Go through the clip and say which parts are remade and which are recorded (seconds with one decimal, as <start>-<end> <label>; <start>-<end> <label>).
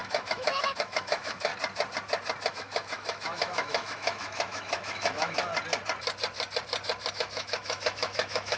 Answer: 0.0-1.5 remade; 1.5-2.5 recorded; 2.5-5.5 remade; 5.5-7.1 recorded; 7.1-8.6 remade